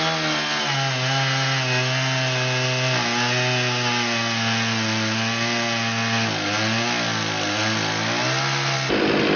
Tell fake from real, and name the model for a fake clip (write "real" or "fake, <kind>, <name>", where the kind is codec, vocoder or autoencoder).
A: real